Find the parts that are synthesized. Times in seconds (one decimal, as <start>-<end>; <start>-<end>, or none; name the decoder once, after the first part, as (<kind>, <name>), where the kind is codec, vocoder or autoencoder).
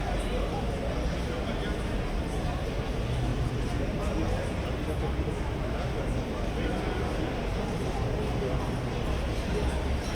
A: none